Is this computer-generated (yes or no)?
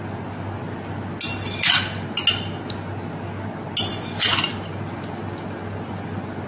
no